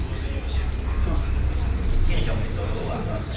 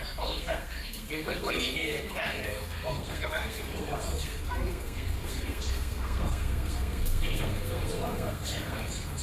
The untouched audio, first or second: first